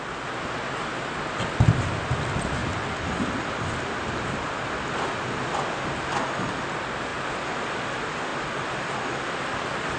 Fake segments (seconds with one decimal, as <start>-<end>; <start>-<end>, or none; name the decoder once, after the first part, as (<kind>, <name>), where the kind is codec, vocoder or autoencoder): none

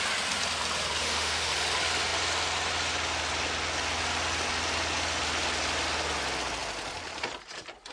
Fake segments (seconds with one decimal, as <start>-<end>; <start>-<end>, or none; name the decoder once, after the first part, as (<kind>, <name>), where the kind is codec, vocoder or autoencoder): 1.0-1.5 (autoencoder, DAC-VAE)

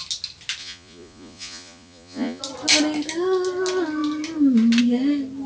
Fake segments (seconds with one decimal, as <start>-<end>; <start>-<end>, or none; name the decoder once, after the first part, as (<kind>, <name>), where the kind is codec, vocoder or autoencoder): 0.6-2.4 (vocoder, Vocos)

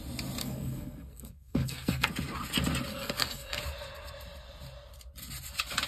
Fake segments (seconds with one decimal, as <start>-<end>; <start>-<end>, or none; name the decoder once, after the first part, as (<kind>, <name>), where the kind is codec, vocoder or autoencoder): 0.4-2.1 (codec, SNAC); 2.9-3.6

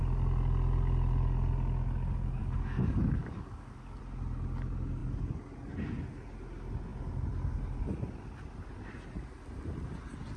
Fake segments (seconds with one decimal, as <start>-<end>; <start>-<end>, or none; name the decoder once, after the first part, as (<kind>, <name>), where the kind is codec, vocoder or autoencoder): 2.4-4.0 (codec, DAC)